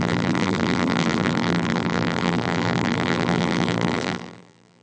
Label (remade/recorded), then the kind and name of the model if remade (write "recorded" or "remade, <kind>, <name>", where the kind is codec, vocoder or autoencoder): remade, vocoder, BigVGAN v2